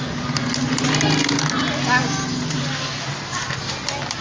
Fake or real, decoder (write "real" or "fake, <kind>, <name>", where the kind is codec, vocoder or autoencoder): real